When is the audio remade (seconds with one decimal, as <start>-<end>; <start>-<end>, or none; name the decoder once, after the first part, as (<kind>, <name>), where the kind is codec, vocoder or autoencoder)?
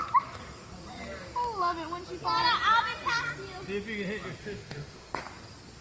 4.4-5.2 (autoencoder, DAC-VAE)